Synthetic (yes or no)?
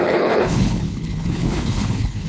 yes